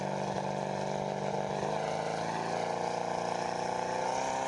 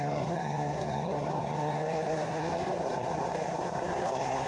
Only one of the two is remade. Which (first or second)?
second